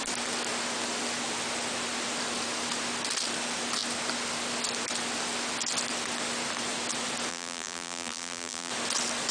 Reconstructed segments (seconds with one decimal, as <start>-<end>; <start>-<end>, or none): 7.3-8.7